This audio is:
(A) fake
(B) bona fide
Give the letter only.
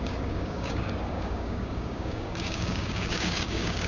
A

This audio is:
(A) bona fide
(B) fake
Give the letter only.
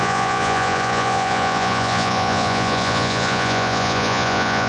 B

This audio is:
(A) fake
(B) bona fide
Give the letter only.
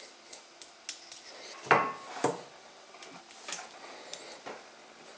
B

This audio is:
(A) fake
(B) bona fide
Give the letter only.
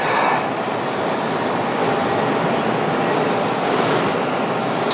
B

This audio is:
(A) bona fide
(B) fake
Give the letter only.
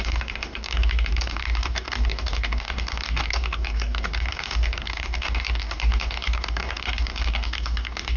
B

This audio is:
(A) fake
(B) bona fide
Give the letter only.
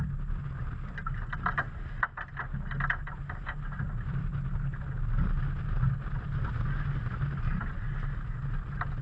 B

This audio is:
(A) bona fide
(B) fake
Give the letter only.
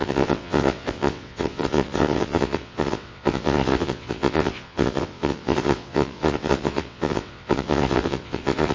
B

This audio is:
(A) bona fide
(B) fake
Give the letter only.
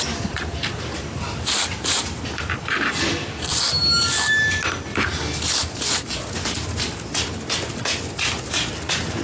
A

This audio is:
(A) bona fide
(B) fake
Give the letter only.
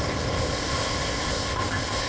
B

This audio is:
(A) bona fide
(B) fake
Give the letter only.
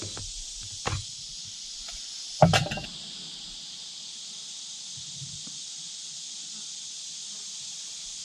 A